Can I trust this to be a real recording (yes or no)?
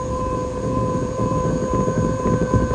no